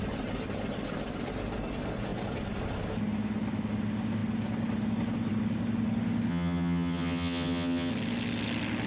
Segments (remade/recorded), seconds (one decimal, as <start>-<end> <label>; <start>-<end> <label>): 0.0-6.3 recorded; 6.3-7.9 remade; 7.9-8.9 recorded